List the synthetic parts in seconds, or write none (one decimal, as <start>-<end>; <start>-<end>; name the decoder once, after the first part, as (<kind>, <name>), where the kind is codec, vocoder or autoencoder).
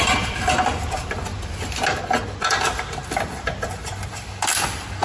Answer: none